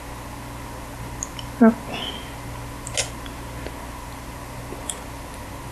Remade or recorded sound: recorded